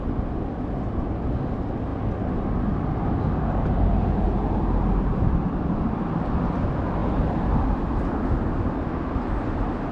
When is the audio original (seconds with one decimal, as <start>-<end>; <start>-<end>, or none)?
0.0-9.9